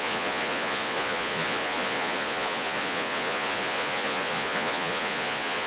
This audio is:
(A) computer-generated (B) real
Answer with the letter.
A